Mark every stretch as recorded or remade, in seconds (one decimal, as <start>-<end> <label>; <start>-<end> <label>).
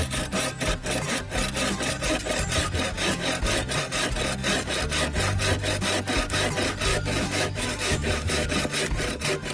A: 0.0-6.9 recorded; 6.9-8.5 remade; 8.5-9.5 recorded